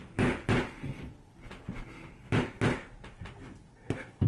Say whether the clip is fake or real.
real